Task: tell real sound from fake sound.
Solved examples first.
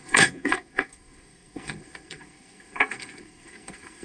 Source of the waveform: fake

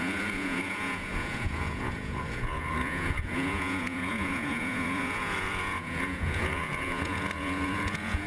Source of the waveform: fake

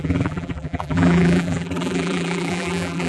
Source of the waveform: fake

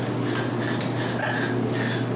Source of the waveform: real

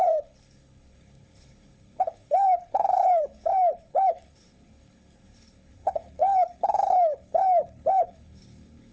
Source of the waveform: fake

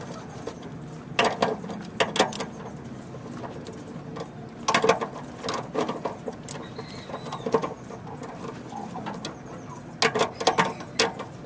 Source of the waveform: real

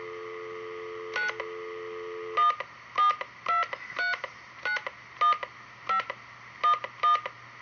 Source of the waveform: real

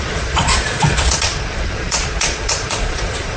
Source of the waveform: fake